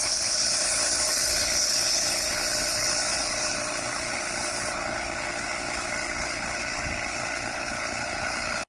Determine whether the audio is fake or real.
fake